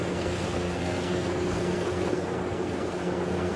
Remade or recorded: remade